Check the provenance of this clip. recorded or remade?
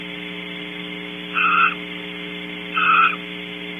recorded